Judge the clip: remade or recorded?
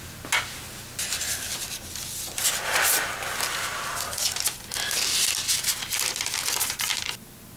recorded